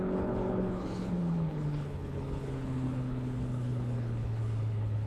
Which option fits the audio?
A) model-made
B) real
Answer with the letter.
A